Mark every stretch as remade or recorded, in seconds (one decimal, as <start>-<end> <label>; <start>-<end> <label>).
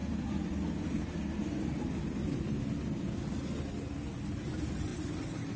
0.0-5.6 recorded